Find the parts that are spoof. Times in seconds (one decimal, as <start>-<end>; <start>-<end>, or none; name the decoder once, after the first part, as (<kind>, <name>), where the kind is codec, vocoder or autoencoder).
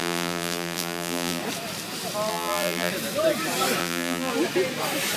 0.0-1.4 (vocoder, BigVGAN v2); 2.3-2.9; 3.8-4.3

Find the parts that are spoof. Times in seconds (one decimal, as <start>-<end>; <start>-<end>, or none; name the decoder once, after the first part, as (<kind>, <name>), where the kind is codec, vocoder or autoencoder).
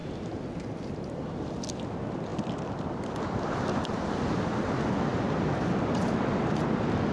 0.0-1.7 (vocoder, BigVGAN v2)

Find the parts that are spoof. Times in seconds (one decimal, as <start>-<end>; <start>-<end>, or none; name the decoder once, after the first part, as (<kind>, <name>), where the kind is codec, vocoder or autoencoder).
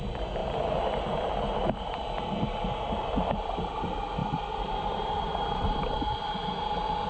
none